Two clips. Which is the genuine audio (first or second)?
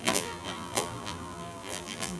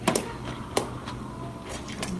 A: second